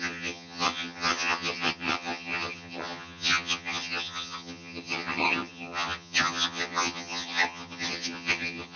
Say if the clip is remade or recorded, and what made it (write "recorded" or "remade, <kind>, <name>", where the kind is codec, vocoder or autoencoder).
remade, vocoder, HiFi-GAN